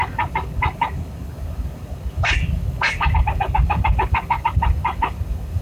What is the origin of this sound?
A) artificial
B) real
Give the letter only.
A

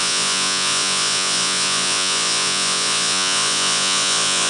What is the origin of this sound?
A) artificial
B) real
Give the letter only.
A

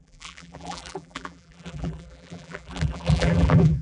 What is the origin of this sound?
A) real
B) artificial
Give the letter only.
B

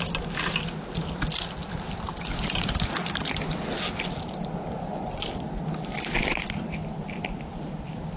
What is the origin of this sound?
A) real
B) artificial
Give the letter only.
A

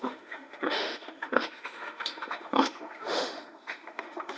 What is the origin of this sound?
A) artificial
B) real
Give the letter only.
A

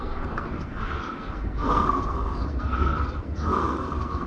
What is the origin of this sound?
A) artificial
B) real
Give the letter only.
A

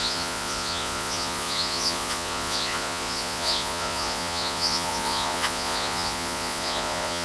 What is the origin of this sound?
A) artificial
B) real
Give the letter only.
A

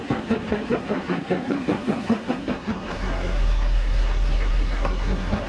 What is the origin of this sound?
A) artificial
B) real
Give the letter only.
A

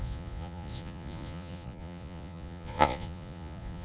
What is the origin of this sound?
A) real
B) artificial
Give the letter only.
B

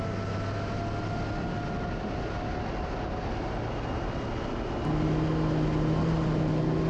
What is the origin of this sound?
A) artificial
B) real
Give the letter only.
B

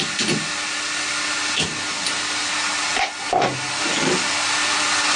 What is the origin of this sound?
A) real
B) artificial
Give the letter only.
A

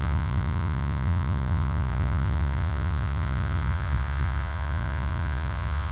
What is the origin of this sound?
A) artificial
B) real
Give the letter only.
A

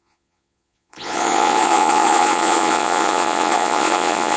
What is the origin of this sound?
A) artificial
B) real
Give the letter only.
A